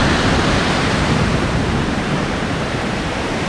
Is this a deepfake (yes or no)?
yes